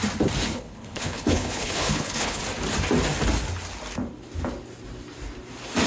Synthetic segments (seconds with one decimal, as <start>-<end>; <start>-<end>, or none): 0.5-2.4